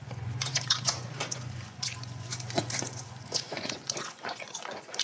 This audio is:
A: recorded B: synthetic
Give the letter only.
B